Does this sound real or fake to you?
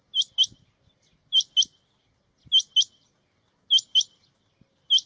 real